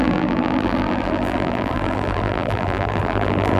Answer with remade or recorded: remade